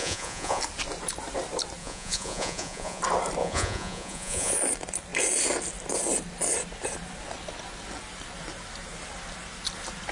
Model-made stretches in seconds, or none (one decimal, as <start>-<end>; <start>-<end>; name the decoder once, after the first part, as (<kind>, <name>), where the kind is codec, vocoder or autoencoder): 0.0-0.6 (vocoder, Vocos); 1.8-3.0; 3.4-4.5